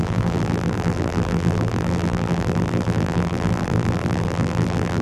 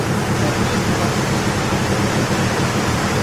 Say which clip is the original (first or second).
second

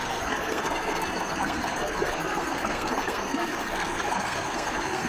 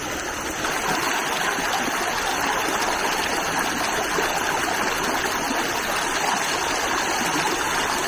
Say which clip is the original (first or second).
second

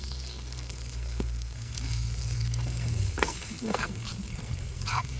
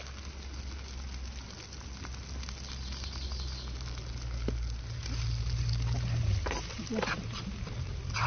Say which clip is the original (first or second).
second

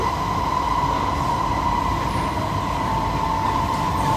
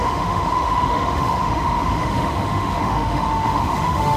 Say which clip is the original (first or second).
first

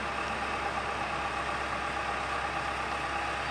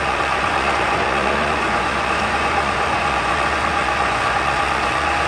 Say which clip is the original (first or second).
first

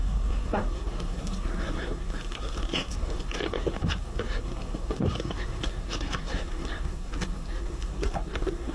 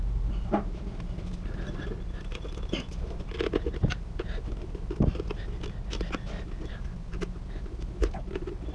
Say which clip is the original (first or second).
second